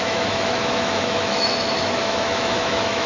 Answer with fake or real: fake